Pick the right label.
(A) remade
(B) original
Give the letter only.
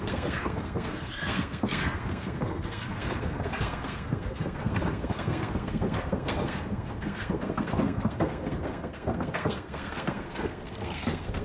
A